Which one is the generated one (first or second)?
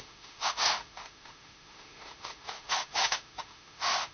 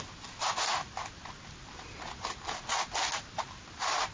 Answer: first